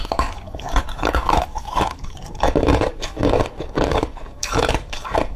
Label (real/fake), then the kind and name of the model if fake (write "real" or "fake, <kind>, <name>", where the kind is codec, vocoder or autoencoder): fake, codec, DAC